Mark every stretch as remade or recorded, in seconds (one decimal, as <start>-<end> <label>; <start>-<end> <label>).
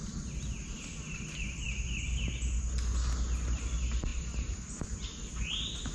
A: 0.0-5.9 recorded